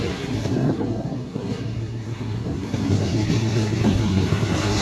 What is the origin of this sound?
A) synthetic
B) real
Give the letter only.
A